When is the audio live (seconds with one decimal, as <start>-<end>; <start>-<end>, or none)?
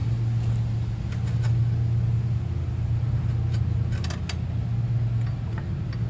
0.0-6.1